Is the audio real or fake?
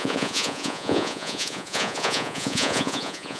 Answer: fake